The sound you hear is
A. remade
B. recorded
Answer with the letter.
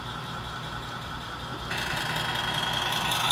B